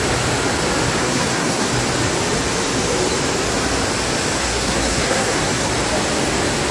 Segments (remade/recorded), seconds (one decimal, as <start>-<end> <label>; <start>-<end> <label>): 0.0-1.0 recorded; 1.0-1.7 remade; 1.7-4.4 recorded; 4.4-5.7 remade; 5.7-6.7 recorded